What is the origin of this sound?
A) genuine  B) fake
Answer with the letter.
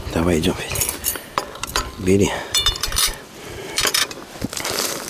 B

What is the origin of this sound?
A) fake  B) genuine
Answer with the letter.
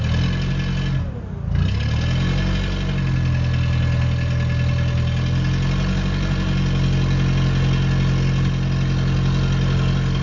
B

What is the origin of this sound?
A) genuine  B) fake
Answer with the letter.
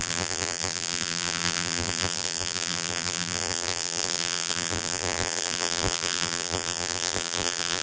B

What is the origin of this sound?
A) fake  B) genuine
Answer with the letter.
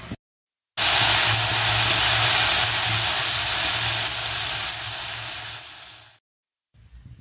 B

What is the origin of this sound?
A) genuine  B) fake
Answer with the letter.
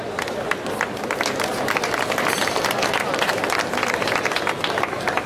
A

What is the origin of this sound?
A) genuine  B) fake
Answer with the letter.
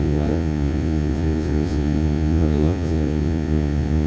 B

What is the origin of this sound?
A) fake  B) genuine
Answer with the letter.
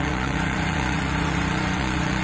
A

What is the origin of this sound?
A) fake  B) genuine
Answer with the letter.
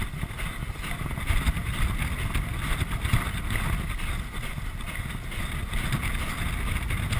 B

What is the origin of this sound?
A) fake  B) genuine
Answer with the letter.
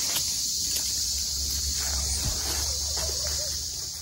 B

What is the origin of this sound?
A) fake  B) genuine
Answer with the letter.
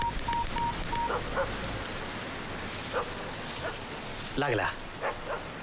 B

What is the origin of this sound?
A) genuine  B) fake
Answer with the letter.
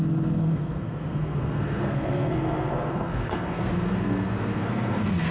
B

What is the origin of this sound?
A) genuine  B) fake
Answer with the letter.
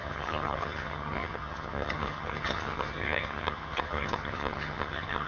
B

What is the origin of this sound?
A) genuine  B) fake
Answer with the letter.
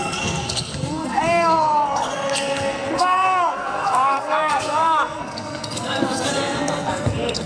B